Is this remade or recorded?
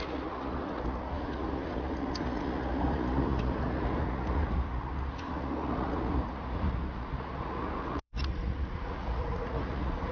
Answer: remade